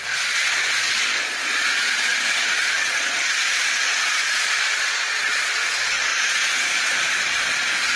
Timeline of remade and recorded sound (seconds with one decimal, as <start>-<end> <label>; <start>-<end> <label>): 0.0-8.0 remade

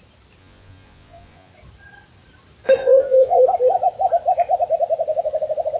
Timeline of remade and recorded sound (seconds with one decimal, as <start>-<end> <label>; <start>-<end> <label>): 0.0-0.4 recorded; 0.4-1.5 remade; 1.5-2.8 recorded; 2.8-3.4 remade; 3.4-5.8 recorded